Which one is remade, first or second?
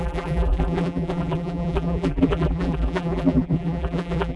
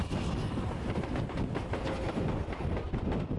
first